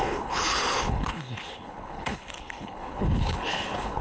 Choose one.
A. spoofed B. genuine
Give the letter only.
A